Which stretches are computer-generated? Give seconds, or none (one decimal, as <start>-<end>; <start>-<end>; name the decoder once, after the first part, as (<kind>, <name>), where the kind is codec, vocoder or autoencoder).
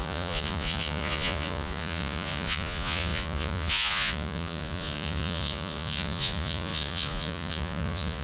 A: 0.0-8.2 (vocoder, Vocos)